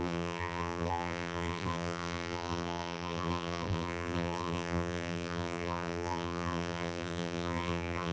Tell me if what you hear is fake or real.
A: fake